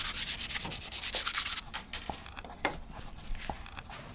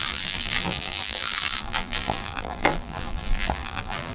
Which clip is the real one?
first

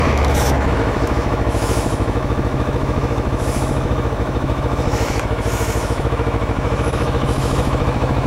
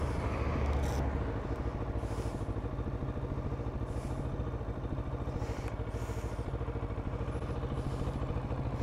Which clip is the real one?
second